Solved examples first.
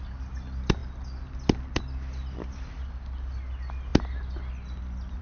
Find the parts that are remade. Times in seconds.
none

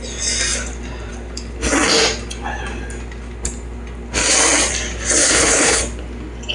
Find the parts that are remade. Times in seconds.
5.2-5.8 (codec, HILCodec)

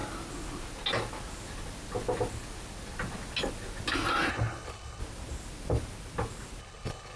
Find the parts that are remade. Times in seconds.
4.3-5.0 (codec, HILCodec); 6.6-7.2

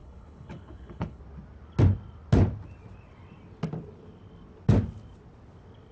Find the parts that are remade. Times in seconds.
0.0-1.2 (codec, HILCodec)

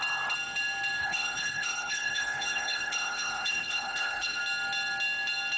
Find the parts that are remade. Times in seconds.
1.0-4.4 (codec, HILCodec)